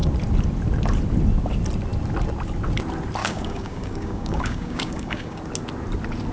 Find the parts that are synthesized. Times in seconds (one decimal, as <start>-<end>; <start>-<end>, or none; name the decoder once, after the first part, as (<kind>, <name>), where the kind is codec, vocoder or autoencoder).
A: 3.2-5.4 (codec, DAC)